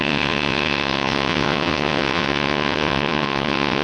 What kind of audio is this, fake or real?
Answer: fake